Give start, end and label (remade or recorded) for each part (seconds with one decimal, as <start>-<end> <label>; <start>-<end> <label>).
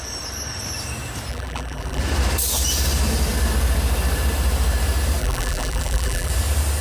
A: 0.0-1.3 recorded; 1.3-2.0 remade; 2.0-5.2 recorded; 5.2-6.3 remade; 6.3-6.8 recorded